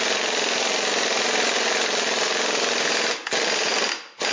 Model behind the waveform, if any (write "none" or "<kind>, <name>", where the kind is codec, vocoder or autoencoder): none